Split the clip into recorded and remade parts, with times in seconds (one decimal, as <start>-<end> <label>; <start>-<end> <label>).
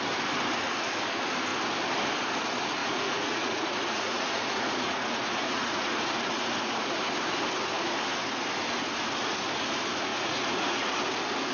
0.0-2.8 recorded; 2.8-6.9 remade; 6.9-10.1 recorded; 10.1-11.0 remade; 11.0-11.5 recorded